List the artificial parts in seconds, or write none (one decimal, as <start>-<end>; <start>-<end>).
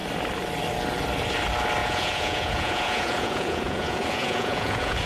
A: 1.8-5.1